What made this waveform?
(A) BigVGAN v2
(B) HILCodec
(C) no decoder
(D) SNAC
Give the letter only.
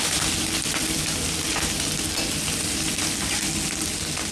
C